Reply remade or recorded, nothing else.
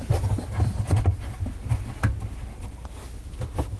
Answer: recorded